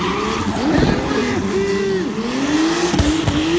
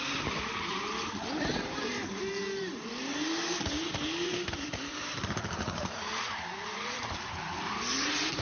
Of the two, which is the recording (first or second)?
first